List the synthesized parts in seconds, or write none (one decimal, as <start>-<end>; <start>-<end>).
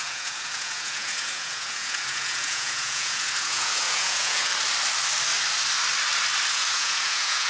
0.0-4.5; 6.5-7.5